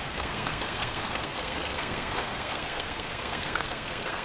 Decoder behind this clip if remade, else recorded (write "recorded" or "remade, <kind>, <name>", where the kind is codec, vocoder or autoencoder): remade, codec, SNAC